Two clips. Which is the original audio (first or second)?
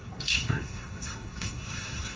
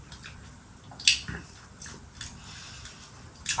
second